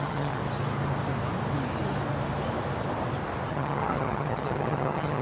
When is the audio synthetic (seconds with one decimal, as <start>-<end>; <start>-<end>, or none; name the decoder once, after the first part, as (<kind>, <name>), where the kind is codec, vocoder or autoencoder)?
0.0-0.4 (vocoder, HiFi-GAN); 3.5-5.2